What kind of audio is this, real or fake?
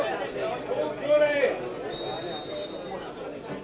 real